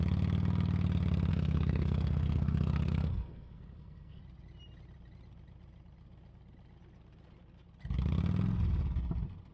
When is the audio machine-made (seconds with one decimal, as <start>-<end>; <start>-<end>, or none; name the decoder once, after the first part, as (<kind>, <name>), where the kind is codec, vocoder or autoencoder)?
1.3-4.2 (codec, SNAC)